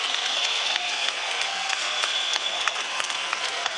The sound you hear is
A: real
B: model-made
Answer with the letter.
B